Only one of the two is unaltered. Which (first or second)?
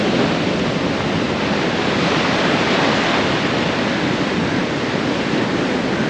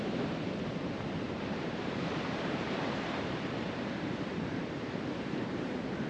first